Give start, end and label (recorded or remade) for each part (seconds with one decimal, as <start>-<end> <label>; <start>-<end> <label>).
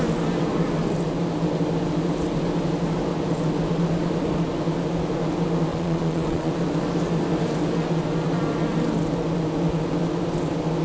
0.0-5.7 recorded; 5.7-6.5 remade; 6.5-10.8 recorded